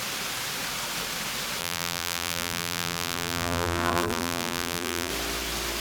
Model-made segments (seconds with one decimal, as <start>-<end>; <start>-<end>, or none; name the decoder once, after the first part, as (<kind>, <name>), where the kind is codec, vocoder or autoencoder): 1.6-5.1 (vocoder, BigVGAN v2)